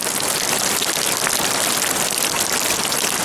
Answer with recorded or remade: recorded